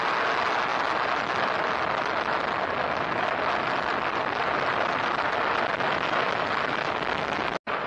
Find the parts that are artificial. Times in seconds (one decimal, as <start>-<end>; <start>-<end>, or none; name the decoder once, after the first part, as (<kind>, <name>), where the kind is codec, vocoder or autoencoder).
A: none